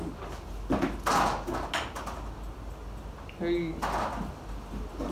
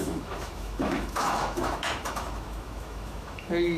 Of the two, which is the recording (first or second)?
first